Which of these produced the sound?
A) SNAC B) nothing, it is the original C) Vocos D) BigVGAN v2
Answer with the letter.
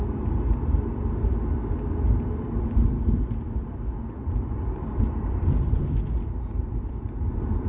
B